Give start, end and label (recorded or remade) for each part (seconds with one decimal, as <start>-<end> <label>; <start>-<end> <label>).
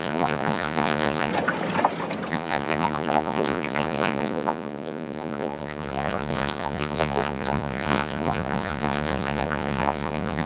0.0-1.3 remade; 1.3-2.3 recorded; 2.3-10.5 remade